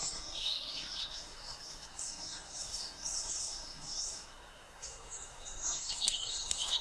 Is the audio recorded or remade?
remade